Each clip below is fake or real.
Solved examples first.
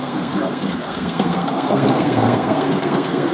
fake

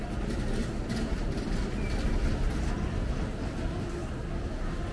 real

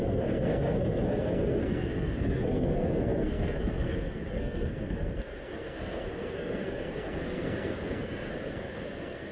fake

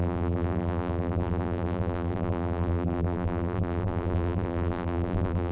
fake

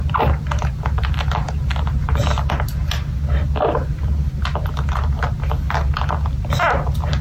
real